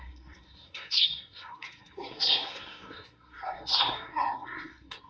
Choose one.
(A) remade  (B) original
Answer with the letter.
A